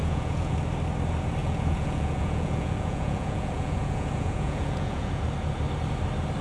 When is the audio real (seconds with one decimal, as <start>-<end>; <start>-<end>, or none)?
0.5-1.4; 5.2-6.4